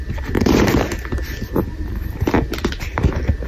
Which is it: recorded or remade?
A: recorded